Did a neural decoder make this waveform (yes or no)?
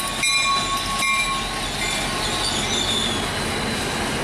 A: no